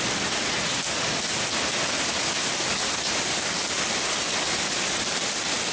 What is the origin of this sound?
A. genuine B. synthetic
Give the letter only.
A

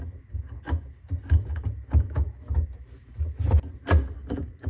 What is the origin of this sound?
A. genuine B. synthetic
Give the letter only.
A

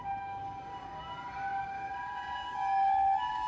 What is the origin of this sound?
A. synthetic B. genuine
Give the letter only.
A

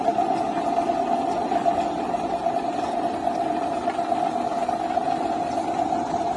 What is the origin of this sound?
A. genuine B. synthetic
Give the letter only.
A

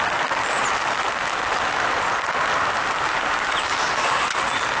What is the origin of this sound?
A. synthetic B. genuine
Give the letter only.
B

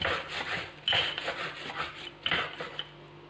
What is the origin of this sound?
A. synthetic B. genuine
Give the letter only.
B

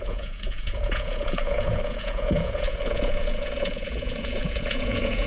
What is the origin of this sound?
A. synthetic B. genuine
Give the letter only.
A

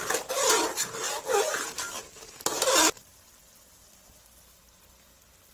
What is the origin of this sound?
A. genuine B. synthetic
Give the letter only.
A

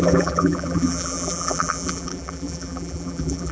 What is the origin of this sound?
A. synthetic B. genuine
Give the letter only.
A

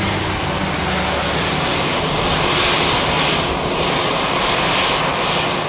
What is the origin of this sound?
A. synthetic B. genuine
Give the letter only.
B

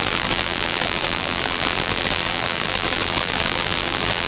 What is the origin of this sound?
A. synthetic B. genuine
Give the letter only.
A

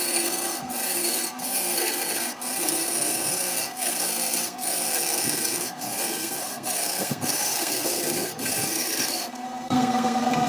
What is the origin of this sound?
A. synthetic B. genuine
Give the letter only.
A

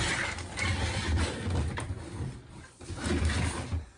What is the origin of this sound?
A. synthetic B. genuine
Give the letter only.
B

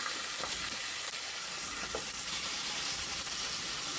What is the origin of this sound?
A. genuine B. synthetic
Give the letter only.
A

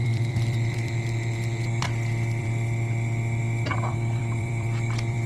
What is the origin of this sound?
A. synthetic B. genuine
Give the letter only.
A